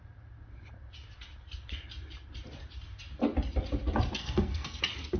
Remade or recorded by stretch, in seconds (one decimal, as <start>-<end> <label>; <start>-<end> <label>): 0.0-4.2 recorded; 4.2-4.8 remade; 4.8-5.2 recorded